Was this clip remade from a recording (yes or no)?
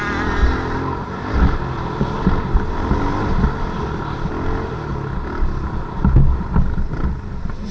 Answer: no